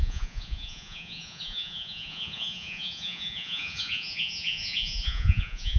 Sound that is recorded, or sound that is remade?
remade